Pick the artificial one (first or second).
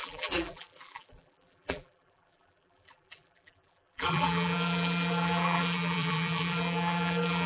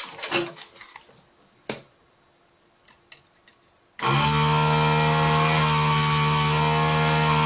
first